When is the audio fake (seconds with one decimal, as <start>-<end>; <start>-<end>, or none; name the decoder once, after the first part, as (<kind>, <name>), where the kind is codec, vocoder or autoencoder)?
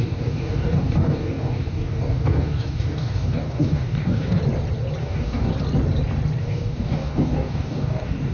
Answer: 0.0-4.4 (codec, DAC); 5.0-5.5; 6.4-8.3